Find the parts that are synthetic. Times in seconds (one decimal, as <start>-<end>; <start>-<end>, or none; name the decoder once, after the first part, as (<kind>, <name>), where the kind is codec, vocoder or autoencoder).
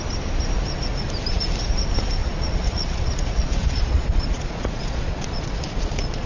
2.2-6.3 (vocoder, Vocos)